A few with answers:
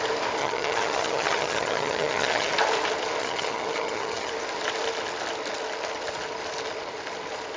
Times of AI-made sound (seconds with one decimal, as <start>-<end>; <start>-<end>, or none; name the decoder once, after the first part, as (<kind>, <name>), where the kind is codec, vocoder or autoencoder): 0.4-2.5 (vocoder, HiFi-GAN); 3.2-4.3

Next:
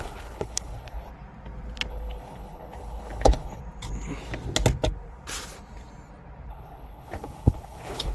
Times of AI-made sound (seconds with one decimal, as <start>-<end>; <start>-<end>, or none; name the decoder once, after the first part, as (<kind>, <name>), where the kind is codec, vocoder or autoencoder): 0.0-1.1 (codec, HILCodec); 1.9-3.6; 6.5-8.1

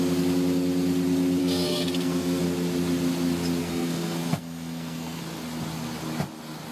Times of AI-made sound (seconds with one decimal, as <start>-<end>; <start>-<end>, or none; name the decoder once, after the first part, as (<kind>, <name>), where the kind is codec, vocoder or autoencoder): 1.4-2.4 (codec, SNAC); 3.6-5.2

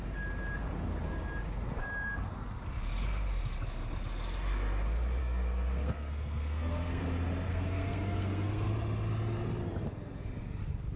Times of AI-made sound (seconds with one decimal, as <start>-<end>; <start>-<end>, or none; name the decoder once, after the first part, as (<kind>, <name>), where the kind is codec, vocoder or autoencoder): 5.2-7.0 (codec, SNAC); 7.5-8.7